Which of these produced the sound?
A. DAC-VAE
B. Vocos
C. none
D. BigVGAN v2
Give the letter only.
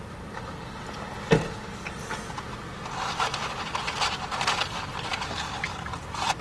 C